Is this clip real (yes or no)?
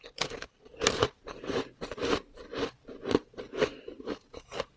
no